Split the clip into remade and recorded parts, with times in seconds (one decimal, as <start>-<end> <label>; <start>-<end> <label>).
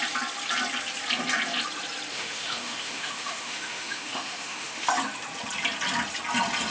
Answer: 0.0-2.1 recorded; 2.1-4.9 remade; 4.9-6.7 recorded